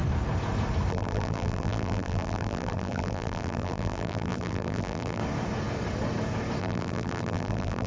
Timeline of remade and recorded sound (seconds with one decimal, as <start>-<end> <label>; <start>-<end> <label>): 0.0-0.9 recorded; 0.9-5.2 remade; 5.2-6.6 recorded; 6.6-7.9 remade

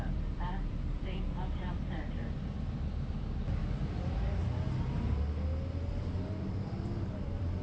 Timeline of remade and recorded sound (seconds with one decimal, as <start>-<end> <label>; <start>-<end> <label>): 0.0-3.6 remade; 3.6-6.0 recorded; 6.0-7.6 remade

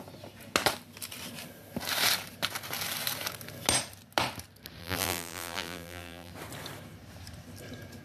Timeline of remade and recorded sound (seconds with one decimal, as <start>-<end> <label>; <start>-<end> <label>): 0.0-4.8 recorded; 4.8-6.3 remade; 6.3-8.0 recorded

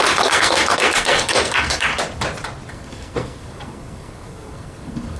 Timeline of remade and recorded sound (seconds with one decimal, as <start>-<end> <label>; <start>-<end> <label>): 0.0-1.9 remade; 1.9-2.7 recorded; 2.7-5.2 remade

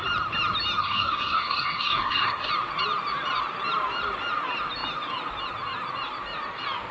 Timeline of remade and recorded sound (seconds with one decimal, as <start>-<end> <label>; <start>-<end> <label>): 0.0-0.8 recorded; 0.8-2.5 remade; 2.5-6.9 recorded

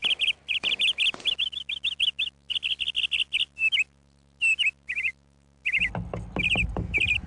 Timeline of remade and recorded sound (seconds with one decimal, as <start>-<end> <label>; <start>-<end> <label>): 0.0-7.3 recorded